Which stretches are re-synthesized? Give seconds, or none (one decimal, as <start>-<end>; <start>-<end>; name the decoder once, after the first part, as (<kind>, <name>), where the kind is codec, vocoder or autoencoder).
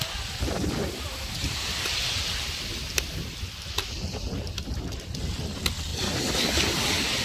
none